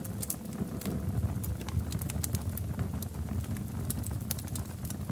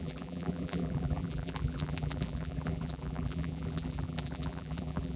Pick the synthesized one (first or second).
second